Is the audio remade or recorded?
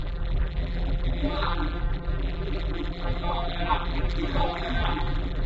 remade